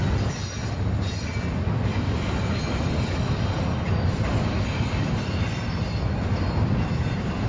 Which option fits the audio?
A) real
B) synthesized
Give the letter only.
A